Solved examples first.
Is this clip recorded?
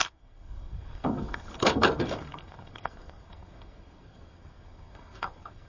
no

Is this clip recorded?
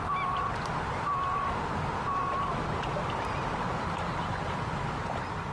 yes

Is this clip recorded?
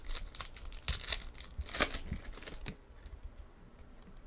yes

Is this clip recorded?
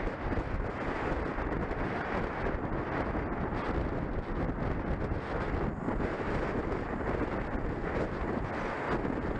yes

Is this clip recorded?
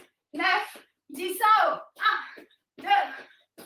no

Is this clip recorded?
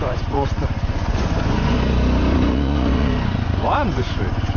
no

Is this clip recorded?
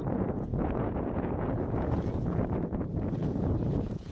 no